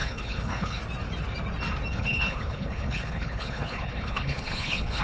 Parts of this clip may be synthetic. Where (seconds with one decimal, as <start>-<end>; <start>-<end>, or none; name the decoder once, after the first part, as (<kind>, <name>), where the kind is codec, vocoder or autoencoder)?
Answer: 0.0-0.8 (codec, HILCodec); 1.9-5.0

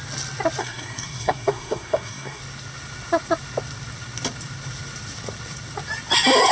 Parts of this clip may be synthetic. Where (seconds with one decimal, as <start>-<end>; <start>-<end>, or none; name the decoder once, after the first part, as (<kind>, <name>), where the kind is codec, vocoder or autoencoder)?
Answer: 0.6-2.4 (codec, SNAC)

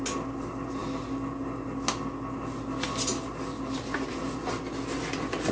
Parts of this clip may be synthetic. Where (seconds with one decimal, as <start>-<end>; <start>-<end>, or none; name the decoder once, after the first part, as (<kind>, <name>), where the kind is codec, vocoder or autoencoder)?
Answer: none

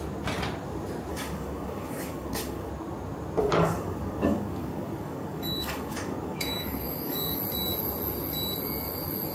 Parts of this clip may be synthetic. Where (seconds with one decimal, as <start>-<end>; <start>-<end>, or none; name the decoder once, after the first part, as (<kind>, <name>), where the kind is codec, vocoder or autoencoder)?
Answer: 1.1-2.7 (codec, DAC); 3.4-7.4